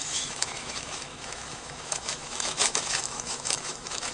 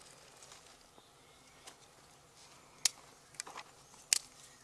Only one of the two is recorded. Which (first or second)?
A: second